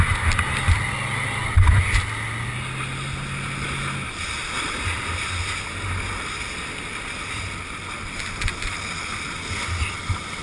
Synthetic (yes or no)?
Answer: no